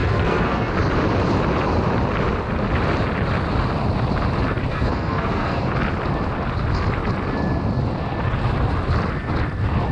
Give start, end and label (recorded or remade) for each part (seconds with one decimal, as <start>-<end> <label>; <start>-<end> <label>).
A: 0.0-0.7 remade; 0.7-4.7 recorded; 4.7-5.6 remade; 5.6-9.9 recorded